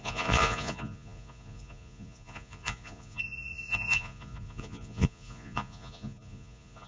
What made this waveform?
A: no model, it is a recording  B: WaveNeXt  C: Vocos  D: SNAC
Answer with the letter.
C